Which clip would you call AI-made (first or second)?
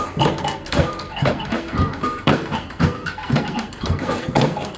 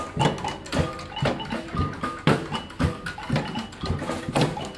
first